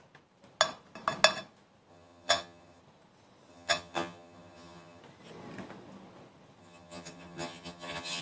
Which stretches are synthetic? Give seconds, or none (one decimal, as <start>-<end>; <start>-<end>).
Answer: 1.9-2.8; 3.5-5.0; 6.6-8.2